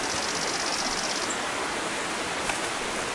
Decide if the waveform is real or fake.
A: real